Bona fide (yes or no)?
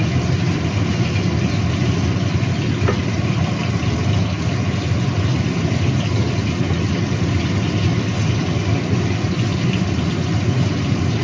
yes